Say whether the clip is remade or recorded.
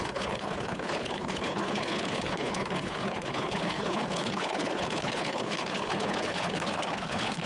remade